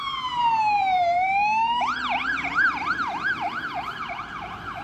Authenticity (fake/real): fake